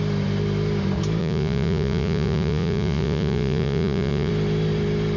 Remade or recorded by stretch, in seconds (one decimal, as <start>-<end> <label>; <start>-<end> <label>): 0.0-1.2 recorded; 1.2-4.3 remade; 4.3-5.2 recorded

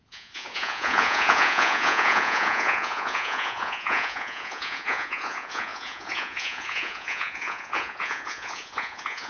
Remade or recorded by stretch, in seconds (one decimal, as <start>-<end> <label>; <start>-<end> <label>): 0.0-9.3 remade

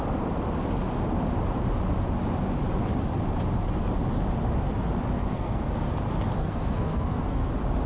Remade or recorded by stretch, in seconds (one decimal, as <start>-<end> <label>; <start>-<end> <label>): 0.0-5.2 recorded; 5.2-5.9 remade; 5.9-6.4 recorded; 6.4-7.5 remade; 7.5-7.9 recorded

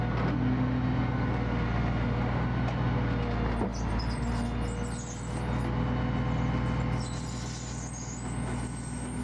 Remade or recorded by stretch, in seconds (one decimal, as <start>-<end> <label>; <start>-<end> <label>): 0.0-3.7 recorded; 3.7-4.3 remade; 4.3-9.2 recorded

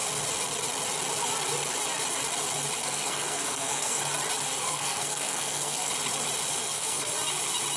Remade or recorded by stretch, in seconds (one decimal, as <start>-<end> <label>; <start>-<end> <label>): 0.0-2.8 recorded; 2.8-4.0 remade; 4.0-4.6 recorded; 4.6-5.9 remade; 5.9-6.6 recorded; 6.6-7.1 remade; 7.1-7.8 recorded